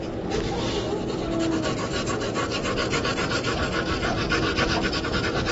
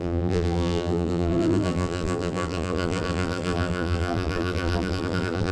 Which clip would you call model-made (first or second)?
second